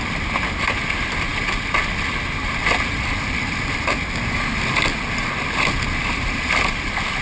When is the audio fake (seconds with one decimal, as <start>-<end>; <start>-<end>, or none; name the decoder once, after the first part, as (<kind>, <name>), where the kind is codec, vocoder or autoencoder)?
none